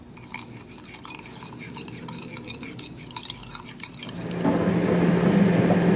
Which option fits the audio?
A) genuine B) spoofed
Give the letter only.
A